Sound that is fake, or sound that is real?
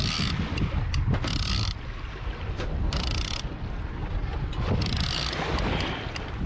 real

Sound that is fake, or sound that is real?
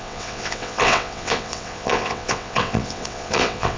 fake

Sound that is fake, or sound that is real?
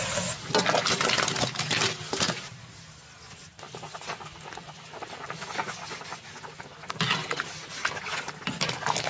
real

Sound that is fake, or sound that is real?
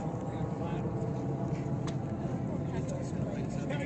real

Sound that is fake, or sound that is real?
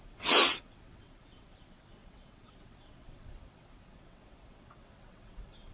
fake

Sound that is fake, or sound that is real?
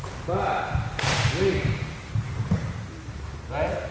real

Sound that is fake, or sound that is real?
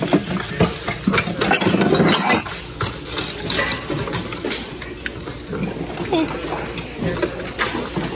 real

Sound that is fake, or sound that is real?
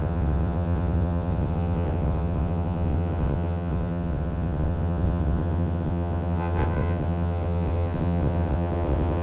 fake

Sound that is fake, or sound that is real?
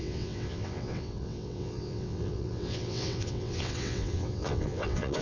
fake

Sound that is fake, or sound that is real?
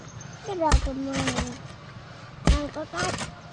real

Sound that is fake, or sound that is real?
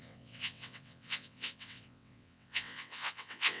fake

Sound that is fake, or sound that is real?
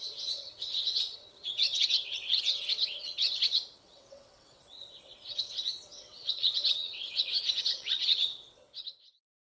fake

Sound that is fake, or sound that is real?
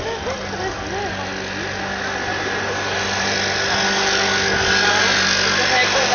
real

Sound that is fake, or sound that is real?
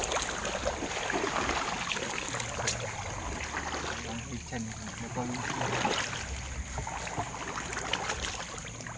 real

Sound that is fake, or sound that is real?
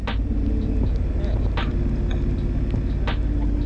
real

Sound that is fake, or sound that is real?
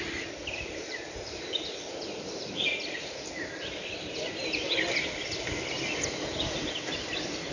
real